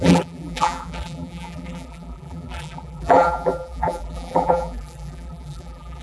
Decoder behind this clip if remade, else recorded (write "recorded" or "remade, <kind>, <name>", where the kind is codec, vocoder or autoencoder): remade, vocoder, BigVGAN v2